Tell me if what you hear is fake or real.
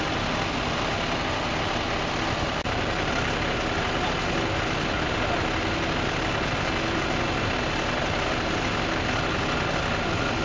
real